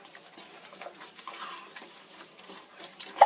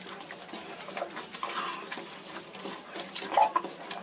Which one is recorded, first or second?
second